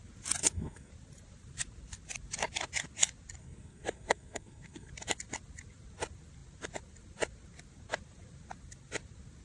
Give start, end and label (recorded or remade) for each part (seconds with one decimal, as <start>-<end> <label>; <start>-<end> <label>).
0.0-0.4 recorded; 0.4-0.9 remade; 0.9-3.4 recorded; 3.4-4.9 remade; 4.9-9.4 recorded